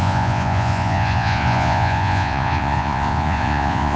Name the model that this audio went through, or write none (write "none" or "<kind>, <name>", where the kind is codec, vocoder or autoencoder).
vocoder, Vocos